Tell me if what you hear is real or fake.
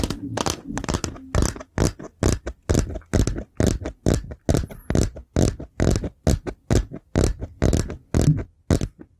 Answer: real